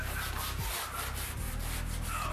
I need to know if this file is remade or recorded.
remade